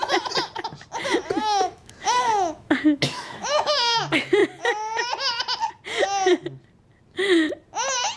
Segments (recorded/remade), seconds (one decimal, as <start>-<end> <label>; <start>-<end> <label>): 0.0-1.4 recorded; 1.4-4.0 remade; 4.0-8.2 recorded